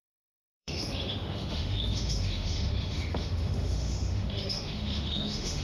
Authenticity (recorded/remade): remade